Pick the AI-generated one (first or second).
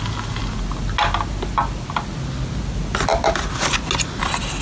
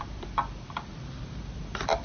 second